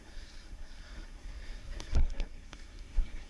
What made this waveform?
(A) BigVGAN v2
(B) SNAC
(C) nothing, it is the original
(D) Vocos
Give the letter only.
B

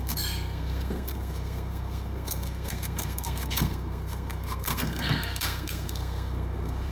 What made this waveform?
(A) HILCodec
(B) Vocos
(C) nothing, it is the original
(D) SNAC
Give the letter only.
D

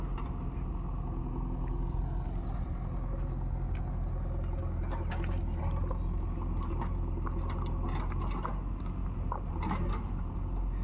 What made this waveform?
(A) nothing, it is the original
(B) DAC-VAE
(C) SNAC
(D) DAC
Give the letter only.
A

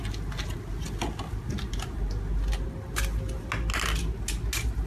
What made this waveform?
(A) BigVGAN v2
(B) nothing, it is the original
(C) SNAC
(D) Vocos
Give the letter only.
B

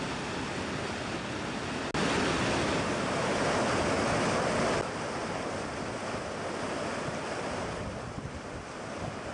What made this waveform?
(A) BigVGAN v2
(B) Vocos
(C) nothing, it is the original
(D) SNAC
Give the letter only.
C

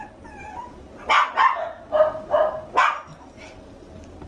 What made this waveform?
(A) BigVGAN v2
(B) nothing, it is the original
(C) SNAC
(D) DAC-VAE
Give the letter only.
B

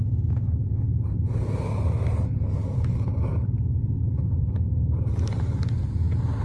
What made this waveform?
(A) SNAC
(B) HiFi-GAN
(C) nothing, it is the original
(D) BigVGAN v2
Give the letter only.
C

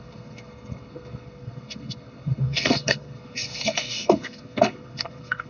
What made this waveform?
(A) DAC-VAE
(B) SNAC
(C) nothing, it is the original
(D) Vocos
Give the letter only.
B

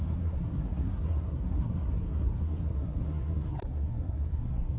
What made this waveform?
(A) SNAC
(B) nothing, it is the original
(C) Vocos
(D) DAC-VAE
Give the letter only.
A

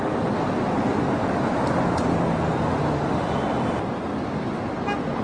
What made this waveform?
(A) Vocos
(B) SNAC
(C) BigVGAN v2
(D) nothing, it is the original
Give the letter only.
D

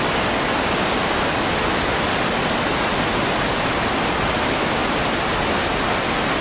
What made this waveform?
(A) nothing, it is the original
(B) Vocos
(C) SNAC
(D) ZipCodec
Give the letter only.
A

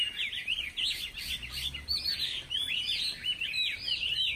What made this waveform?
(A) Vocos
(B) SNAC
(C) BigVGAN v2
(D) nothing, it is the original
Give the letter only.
D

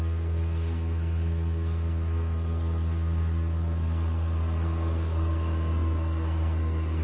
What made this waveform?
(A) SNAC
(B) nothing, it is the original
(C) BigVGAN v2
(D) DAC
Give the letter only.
A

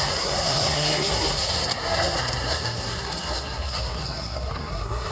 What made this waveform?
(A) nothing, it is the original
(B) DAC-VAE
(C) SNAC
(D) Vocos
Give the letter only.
C